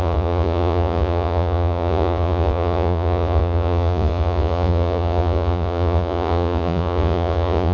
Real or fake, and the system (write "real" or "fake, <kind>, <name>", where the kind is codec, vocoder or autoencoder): fake, vocoder, Vocos